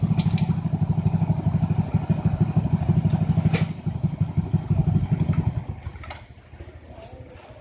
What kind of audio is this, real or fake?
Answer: real